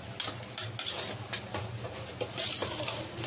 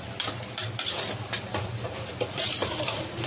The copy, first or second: second